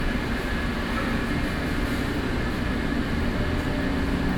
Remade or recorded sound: recorded